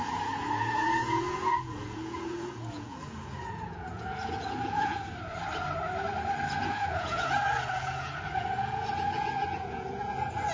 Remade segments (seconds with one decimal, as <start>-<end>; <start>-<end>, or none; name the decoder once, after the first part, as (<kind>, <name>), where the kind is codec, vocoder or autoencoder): 0.0-5.0 (vocoder, Vocos); 6.5-10.5